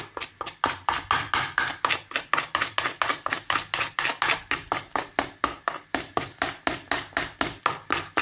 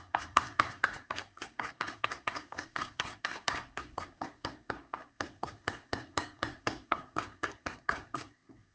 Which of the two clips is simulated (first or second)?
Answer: second